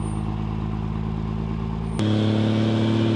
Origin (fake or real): real